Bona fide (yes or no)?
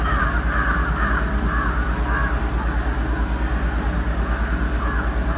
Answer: yes